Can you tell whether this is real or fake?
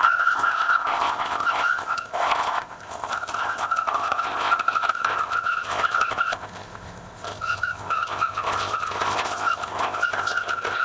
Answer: fake